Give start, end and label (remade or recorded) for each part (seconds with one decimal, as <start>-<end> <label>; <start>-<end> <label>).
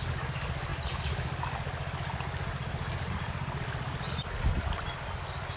0.0-5.6 recorded